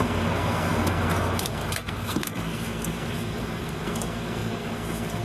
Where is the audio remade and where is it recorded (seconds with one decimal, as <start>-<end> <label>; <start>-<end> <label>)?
0.0-5.2 remade